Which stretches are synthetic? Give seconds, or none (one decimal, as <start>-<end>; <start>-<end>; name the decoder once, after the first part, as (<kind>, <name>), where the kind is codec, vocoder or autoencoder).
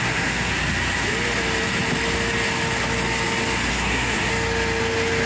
0.0-0.5 (codec, SNAC); 3.7-4.3